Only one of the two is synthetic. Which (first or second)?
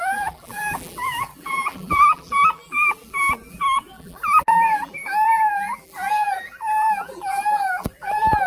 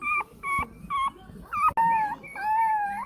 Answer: first